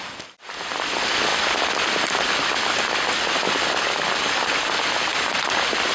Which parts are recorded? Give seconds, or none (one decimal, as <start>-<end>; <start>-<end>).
0.0-5.9